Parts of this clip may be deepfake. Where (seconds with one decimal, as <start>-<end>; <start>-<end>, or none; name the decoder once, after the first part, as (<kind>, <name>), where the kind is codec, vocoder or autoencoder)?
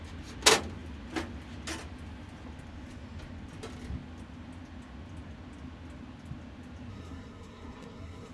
6.9-8.3 (codec, SNAC)